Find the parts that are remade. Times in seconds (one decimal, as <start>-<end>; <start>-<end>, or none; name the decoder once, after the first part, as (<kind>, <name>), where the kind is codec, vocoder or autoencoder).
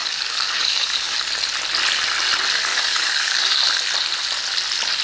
0.0-1.2 (codec, DAC); 2.7-3.6